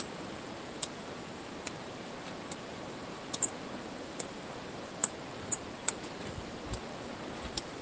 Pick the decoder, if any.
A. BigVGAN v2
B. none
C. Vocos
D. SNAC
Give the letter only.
A